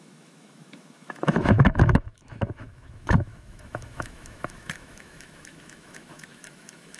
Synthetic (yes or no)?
yes